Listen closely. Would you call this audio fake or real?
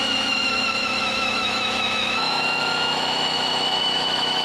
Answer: fake